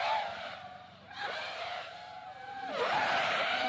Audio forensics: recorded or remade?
remade